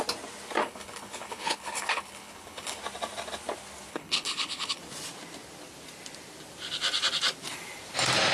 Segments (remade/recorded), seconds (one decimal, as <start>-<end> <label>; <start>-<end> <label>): 0.0-0.6 recorded; 0.6-2.8 remade; 2.8-3.9 recorded; 3.9-4.8 remade; 4.8-8.3 recorded